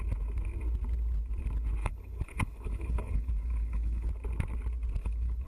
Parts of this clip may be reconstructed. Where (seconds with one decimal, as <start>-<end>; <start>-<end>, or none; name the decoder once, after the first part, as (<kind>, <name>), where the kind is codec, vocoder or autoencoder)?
1.8-4.1 (codec, HILCodec); 5.0-5.5